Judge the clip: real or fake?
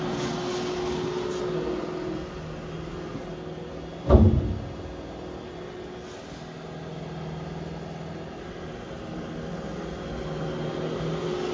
real